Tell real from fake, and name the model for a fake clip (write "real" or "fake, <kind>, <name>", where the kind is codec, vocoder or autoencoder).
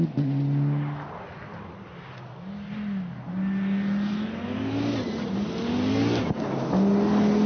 real